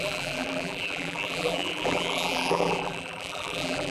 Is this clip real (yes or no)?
no